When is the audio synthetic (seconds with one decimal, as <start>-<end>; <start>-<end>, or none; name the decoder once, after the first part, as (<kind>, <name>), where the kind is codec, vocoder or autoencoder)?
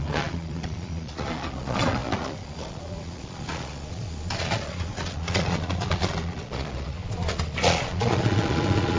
0.0-9.0 (vocoder, Vocos)